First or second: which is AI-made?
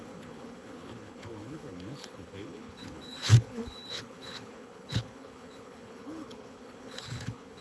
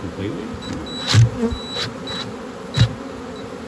first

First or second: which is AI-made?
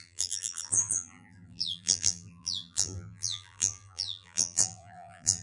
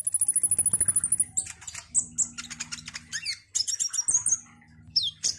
first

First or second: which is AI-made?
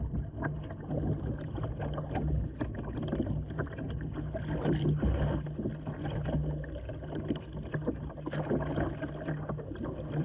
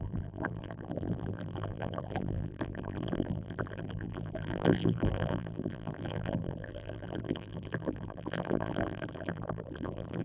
second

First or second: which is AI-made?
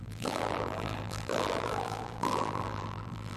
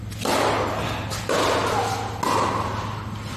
first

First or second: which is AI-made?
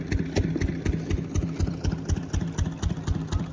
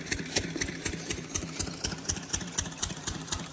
second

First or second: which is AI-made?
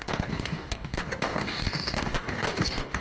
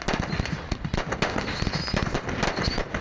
first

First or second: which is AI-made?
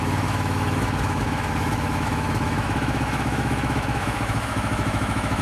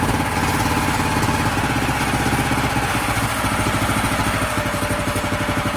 first